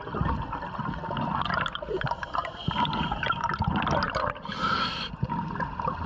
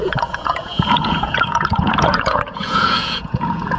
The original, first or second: first